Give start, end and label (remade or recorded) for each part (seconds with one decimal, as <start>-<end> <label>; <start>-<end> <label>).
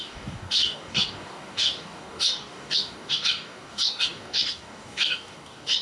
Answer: 0.0-5.8 remade